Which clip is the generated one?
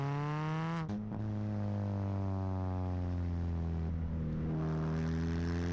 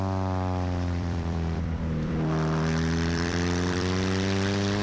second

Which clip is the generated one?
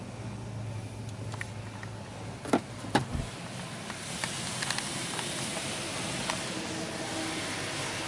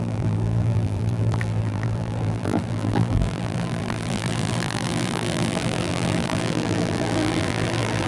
second